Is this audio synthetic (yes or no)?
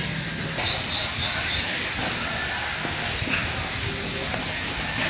no